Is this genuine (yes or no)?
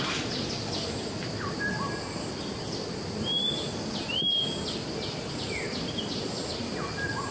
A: yes